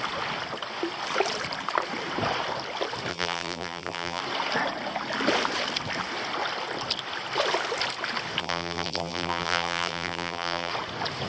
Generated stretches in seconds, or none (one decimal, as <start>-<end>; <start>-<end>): 3.1-4.2; 8.4-10.7